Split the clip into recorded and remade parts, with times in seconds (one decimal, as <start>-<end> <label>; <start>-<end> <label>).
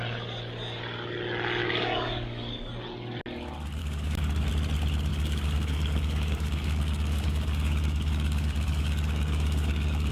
0.0-1.6 recorded; 1.6-2.7 remade; 2.7-3.8 recorded; 3.8-4.5 remade; 4.5-5.1 recorded; 5.1-10.1 remade